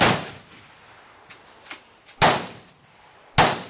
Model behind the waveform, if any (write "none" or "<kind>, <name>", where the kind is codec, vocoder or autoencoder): none